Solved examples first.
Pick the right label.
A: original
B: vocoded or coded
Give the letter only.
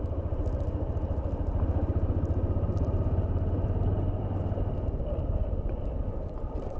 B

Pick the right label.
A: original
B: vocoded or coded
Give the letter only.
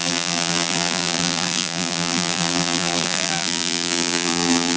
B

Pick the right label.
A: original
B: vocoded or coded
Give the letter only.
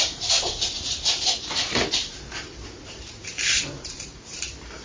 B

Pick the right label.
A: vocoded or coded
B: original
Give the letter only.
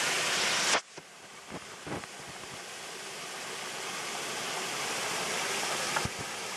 B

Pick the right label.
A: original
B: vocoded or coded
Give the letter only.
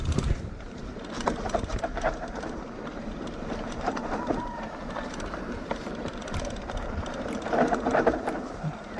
B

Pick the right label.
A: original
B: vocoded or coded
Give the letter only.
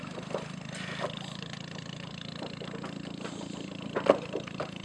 B